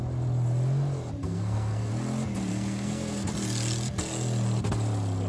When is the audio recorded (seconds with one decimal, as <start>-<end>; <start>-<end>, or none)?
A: 0.0-1.2; 1.9-2.5; 3.3-5.3